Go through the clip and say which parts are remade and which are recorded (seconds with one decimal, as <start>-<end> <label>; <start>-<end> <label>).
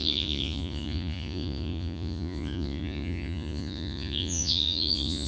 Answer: 0.0-5.3 remade